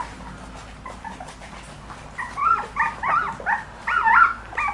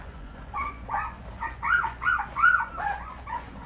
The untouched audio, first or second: first